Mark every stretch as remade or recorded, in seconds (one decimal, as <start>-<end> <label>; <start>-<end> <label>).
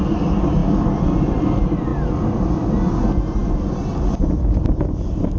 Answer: 0.0-5.4 recorded